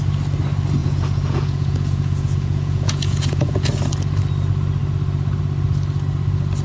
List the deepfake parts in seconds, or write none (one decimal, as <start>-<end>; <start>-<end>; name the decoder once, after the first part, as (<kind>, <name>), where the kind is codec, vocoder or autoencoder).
0.8-3.7 (vocoder, Vocos)